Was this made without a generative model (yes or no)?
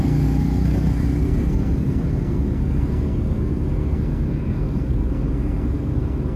no